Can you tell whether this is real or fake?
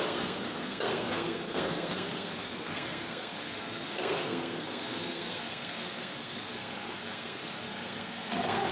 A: fake